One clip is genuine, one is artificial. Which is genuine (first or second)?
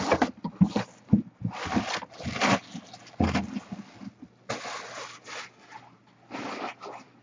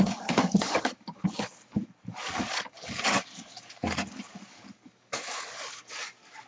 first